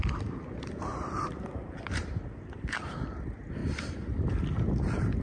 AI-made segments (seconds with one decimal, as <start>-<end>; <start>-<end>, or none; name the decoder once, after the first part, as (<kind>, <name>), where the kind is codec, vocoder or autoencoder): 0.9-2.1 (vocoder, BigVGAN v2); 3.6-4.1